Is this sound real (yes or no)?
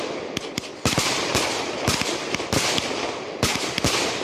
yes